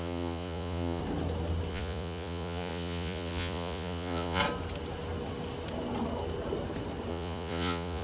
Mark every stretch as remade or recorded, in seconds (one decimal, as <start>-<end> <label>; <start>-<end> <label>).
0.0-1.0 remade; 1.0-1.7 recorded; 1.7-4.4 remade; 4.4-7.1 recorded; 7.1-8.0 remade